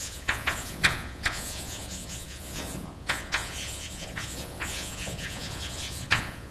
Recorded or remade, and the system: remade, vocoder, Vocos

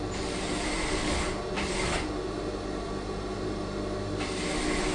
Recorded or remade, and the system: recorded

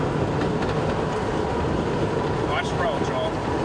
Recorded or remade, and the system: recorded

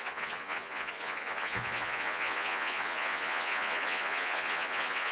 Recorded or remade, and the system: remade, vocoder, Vocos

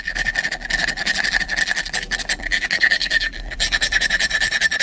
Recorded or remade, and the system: remade, vocoder, BigVGAN v2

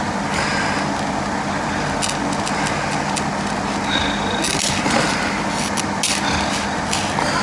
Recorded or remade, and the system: recorded